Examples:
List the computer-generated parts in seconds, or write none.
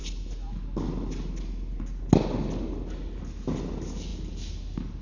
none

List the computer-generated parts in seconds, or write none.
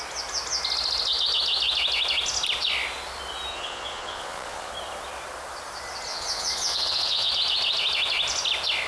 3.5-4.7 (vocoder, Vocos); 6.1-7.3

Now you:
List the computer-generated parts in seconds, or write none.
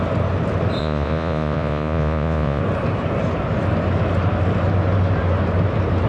0.8-2.6 (vocoder, Vocos)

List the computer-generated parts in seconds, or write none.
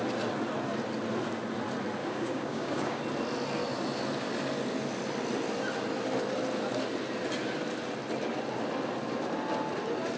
2.0-3.0 (codec, DAC)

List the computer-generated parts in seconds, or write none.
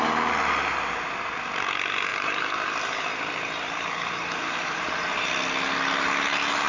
2.1-5.3 (vocoder, BigVGAN v2)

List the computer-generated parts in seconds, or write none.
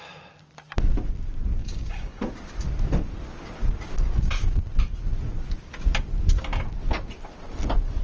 1.6-2.2 (codec, DAC)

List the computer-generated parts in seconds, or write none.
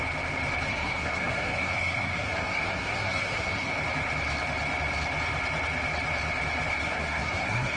0.7-3.7 (codec, SNAC); 6.7-7.8